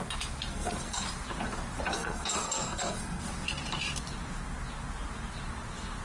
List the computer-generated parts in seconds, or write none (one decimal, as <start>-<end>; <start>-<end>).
0.5-1.0; 1.9-3.2